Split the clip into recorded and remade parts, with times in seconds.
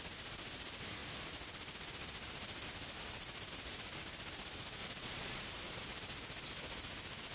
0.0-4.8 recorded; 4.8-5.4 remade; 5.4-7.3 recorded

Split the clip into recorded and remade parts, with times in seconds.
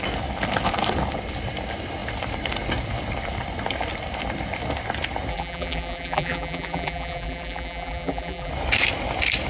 0.0-5.3 recorded; 5.3-8.5 remade; 8.5-9.5 recorded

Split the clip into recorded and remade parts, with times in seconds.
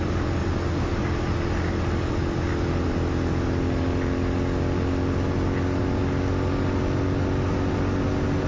0.0-8.5 recorded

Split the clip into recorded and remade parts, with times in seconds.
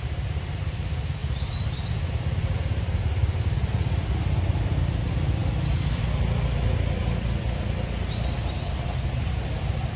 0.0-10.0 recorded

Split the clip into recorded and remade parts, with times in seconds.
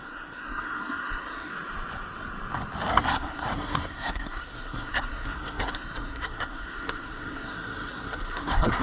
0.0-1.5 remade; 1.5-2.9 recorded; 2.9-8.8 remade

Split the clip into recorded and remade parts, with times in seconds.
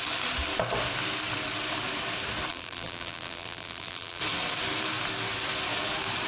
0.0-2.5 recorded; 2.5-4.2 remade; 4.2-6.3 recorded